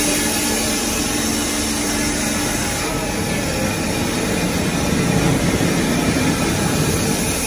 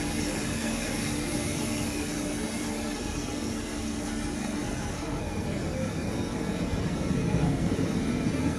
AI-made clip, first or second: second